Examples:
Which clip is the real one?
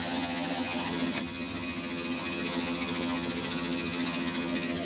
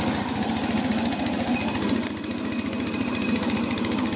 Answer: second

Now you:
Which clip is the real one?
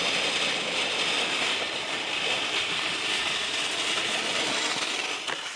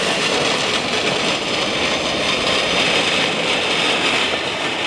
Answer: second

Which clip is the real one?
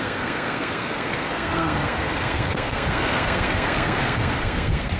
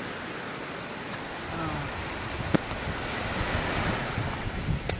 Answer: second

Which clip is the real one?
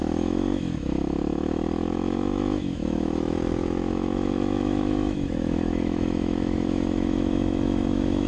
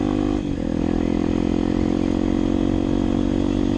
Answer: second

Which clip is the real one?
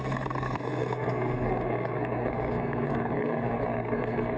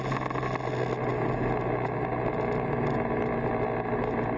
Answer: second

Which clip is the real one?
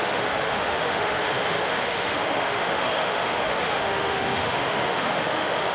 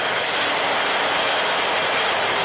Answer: second